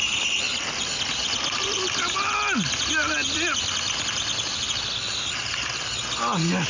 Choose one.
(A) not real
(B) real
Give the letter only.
B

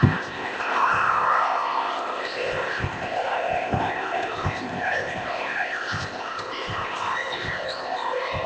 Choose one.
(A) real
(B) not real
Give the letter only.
B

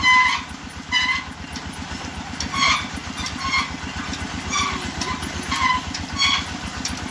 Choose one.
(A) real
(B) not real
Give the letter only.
A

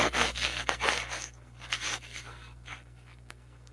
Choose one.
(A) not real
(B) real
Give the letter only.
A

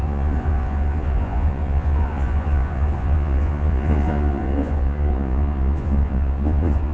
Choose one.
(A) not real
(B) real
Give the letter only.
A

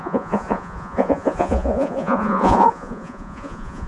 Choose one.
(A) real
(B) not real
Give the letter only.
B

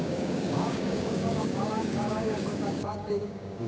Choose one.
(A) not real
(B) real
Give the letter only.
A